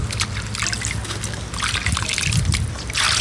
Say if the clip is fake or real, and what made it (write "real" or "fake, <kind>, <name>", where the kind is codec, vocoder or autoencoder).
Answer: real